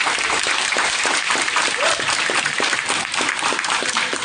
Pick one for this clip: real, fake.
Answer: fake